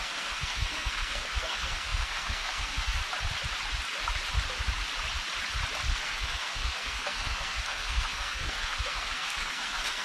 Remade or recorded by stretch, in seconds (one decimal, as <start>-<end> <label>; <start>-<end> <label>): 0.0-3.0 remade; 3.0-5.9 recorded; 5.9-10.0 remade